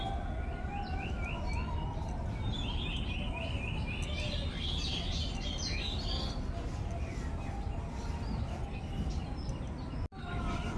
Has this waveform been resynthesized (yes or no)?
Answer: no